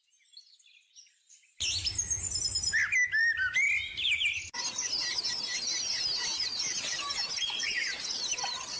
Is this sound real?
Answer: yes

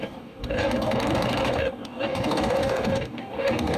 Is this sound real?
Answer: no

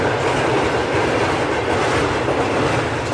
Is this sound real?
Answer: yes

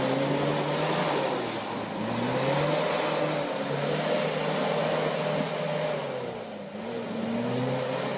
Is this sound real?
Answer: yes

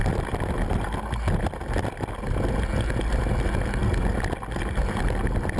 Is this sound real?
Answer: yes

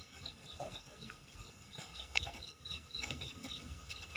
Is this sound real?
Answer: no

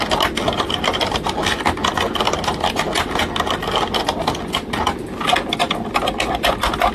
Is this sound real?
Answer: yes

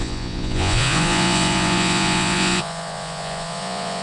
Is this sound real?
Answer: no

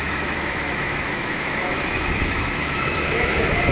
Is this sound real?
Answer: no